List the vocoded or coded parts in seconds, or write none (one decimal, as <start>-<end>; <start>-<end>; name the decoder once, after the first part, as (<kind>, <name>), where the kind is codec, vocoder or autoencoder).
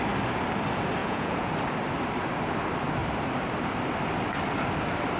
1.0-1.5 (vocoder, Vocos)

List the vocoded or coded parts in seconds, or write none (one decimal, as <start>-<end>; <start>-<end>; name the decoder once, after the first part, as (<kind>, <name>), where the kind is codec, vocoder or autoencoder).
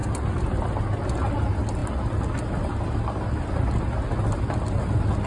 none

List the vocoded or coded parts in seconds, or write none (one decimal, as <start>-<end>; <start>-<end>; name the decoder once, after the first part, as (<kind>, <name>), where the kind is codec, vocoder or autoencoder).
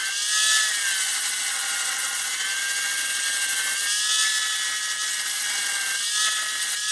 none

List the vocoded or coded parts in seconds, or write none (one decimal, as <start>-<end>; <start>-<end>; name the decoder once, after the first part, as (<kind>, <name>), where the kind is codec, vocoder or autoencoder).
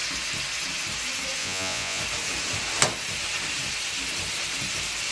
1.4-2.0 (vocoder, Vocos)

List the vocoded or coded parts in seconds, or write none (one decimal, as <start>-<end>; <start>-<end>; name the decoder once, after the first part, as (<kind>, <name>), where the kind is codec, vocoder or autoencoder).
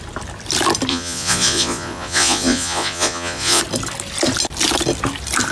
0.9-3.6 (vocoder, Vocos)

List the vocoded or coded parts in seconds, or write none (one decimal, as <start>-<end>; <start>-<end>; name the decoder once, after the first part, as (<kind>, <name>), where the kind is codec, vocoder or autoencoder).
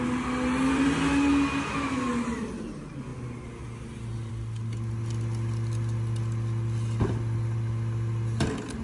none